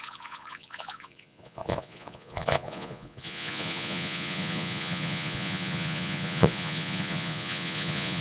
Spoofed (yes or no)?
yes